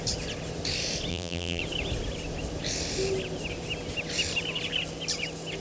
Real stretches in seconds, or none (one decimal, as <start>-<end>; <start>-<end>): 0.0-1.1; 1.6-5.6